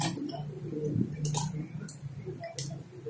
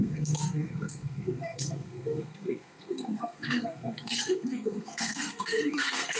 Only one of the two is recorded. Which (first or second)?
first